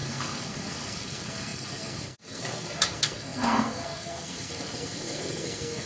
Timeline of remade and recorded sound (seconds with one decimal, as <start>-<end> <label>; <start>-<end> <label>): 0.0-5.9 remade